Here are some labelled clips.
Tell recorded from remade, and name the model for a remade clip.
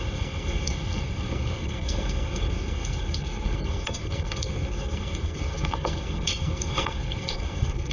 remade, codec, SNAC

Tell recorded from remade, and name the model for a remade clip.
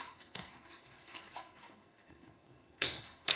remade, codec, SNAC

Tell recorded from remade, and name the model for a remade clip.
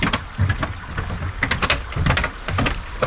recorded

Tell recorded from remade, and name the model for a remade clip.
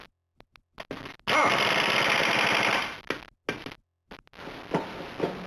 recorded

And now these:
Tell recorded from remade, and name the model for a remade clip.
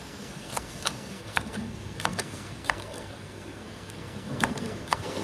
remade, codec, SNAC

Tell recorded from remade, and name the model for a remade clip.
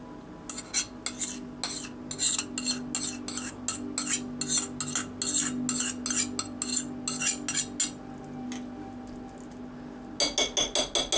recorded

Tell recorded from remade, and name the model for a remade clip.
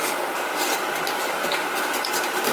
recorded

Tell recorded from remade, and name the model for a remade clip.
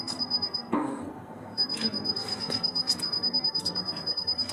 remade, codec, SNAC